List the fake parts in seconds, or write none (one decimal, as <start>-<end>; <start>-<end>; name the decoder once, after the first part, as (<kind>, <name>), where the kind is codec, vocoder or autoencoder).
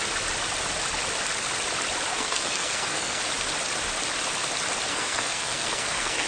2.1-3.2 (codec, SNAC); 4.9-6.3